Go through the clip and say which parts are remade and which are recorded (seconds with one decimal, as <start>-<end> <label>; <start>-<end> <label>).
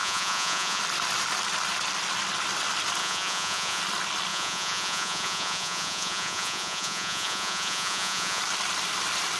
0.0-0.8 remade; 0.8-3.0 recorded; 3.0-3.8 remade; 3.8-4.3 recorded; 4.3-8.4 remade; 8.4-9.4 recorded